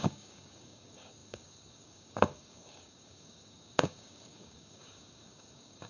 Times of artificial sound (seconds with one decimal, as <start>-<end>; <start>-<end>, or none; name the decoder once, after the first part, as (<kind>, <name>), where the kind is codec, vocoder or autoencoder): 0.0-5.9 (codec, DAC)